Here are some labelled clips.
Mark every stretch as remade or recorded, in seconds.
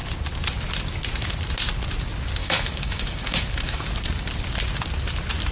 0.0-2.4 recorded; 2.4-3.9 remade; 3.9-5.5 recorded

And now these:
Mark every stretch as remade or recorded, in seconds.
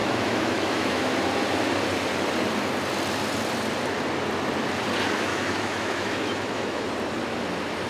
0.0-1.0 remade; 1.0-5.3 recorded; 5.3-6.9 remade; 6.9-7.9 recorded